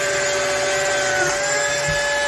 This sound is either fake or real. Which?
real